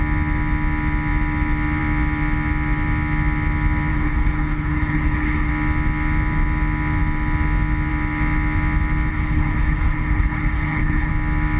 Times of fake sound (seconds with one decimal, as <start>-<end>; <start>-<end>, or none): 3.9-5.5; 9.1-11.1